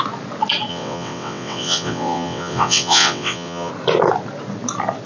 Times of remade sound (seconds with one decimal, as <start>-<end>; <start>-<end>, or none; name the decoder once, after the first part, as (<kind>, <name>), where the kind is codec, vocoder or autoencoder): 0.7-3.7 (vocoder, WaveNeXt)